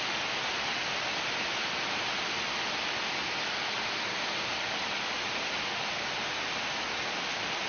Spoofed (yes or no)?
no